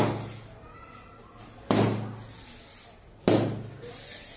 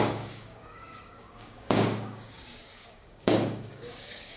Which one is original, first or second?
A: first